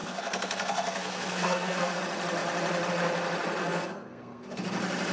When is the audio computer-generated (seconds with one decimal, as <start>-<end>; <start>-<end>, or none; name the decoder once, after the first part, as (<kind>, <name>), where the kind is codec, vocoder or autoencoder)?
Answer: 0.0-2.0 (codec, SNAC); 3.6-4.6